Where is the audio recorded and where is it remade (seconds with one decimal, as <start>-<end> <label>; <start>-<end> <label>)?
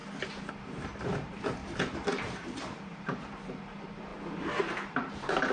0.0-0.5 recorded; 0.5-1.6 remade; 1.6-2.2 recorded; 2.2-4.1 remade; 4.1-4.6 recorded; 4.6-5.5 remade